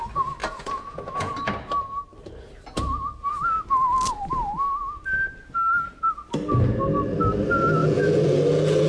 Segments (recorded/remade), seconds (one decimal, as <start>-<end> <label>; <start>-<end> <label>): 0.0-0.4 recorded; 0.4-1.3 remade; 1.3-7.8 recorded; 7.8-8.9 remade